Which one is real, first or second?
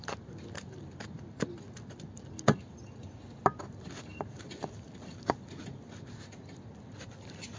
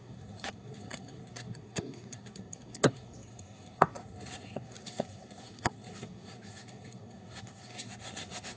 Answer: first